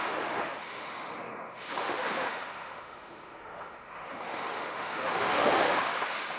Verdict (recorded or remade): remade